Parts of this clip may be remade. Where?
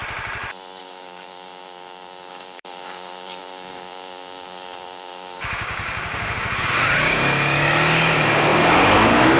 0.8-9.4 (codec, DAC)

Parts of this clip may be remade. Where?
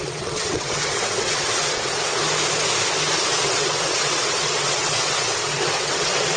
0.0-2.2 (vocoder, WaveNeXt); 3.3-6.4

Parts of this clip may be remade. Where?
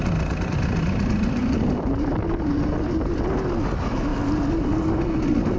1.4-2.7 (vocoder, BigVGAN v2)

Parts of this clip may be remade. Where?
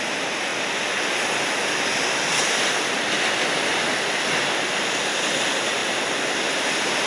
none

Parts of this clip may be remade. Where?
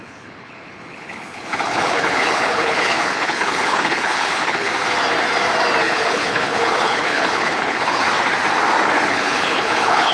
0.0-4.7 (codec, HILCodec); 5.8-8.0; 9.1-10.1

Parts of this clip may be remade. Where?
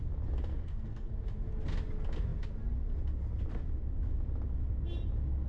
0.5-1.1 (codec, SNAC)